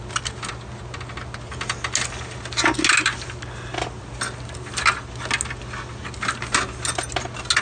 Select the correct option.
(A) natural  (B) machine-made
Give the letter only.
A